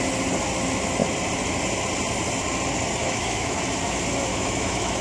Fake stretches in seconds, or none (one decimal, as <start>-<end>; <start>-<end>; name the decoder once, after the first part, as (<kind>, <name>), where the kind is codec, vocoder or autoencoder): 3.0-3.6 (autoencoder, DAC-VAE); 4.3-5.0